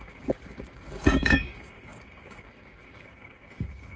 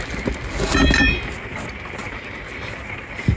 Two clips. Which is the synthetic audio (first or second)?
first